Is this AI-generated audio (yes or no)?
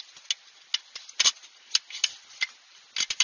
no